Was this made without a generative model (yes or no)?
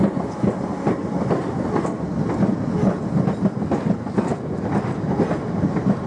yes